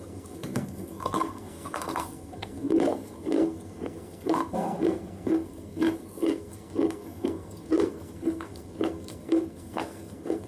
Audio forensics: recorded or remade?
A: remade